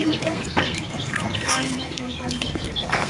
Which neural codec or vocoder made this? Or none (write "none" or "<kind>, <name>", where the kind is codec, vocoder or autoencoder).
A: codec, SNAC